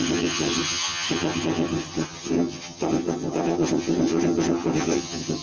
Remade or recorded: remade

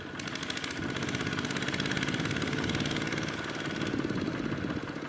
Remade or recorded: recorded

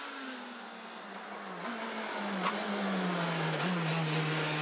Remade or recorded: recorded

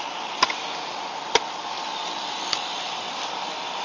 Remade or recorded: recorded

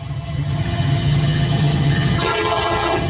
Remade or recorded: remade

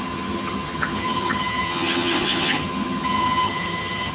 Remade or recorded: remade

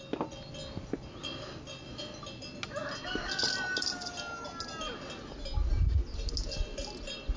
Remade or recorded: recorded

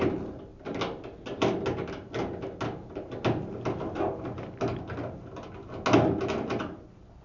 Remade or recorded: recorded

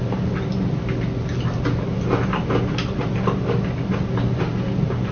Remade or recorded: recorded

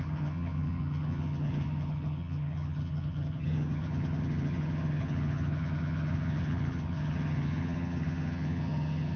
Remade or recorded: remade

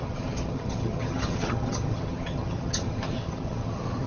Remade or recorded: remade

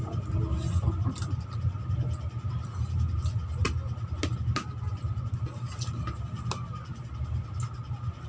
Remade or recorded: recorded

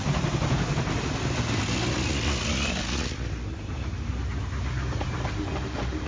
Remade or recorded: recorded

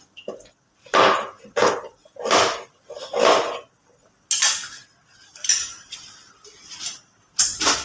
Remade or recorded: recorded